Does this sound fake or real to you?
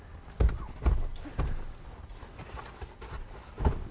real